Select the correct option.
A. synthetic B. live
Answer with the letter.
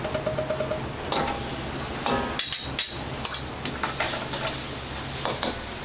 B